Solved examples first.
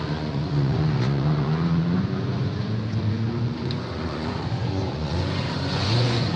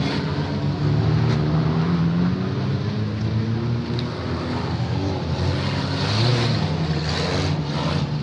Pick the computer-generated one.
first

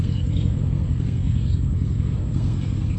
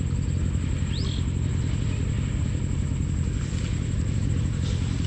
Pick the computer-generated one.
first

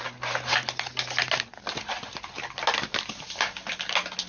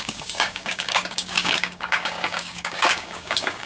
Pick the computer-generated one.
second